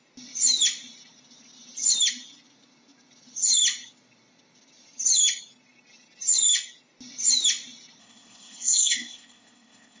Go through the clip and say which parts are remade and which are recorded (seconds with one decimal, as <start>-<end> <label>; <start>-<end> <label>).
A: 0.0-8.0 recorded; 8.0-10.0 remade